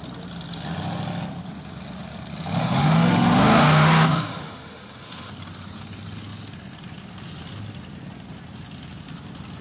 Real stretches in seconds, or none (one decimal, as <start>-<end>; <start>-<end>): 0.0-2.6; 5.3-9.6